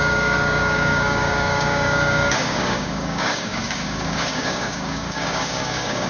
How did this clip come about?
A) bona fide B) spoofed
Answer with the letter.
B